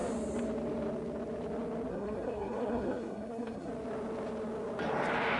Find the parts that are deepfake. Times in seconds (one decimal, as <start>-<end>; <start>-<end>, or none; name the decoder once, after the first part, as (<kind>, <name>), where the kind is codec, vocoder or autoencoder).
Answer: 1.9-3.7 (codec, SNAC)